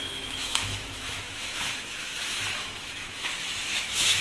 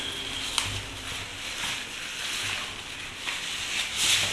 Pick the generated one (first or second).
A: first